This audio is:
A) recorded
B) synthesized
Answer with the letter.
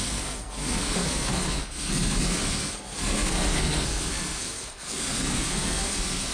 B